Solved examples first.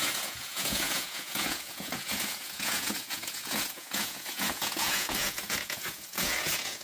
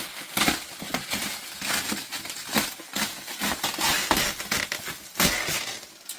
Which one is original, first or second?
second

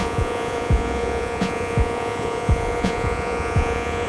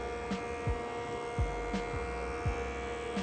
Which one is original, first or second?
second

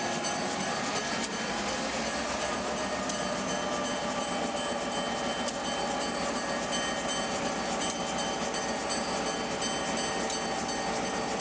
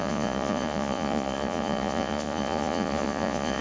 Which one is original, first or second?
first